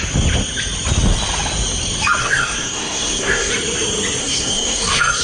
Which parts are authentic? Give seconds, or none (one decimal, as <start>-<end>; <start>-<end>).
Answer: 0.0-2.2; 3.5-4.2